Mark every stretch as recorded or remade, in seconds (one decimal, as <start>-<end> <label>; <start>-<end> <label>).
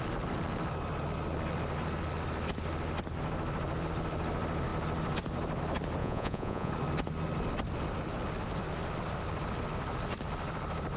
0.0-6.0 recorded; 6.0-6.7 remade; 6.7-11.0 recorded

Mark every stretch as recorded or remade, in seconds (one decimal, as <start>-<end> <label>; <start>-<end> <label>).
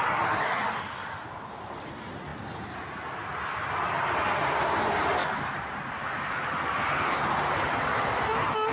0.0-8.7 recorded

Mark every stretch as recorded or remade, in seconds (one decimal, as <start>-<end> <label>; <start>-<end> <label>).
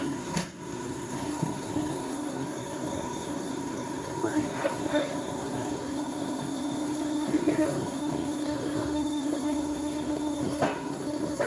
0.0-11.5 remade